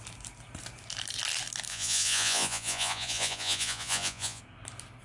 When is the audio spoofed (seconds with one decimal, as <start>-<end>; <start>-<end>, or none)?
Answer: 1.7-4.4